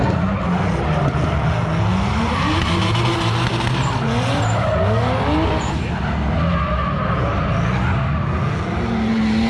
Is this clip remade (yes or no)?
no